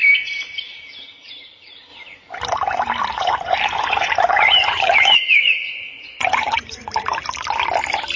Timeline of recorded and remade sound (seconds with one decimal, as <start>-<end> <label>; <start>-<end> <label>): 0.0-3.1 recorded; 3.1-6.9 remade; 6.9-8.2 recorded